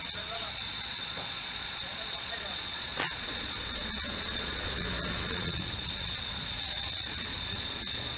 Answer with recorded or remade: remade